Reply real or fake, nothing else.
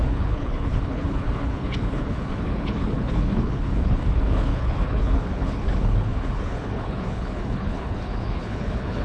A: fake